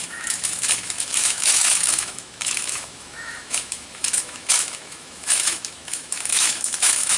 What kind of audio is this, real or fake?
fake